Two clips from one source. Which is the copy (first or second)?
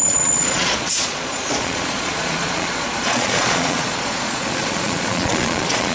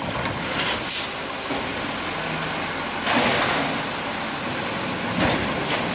first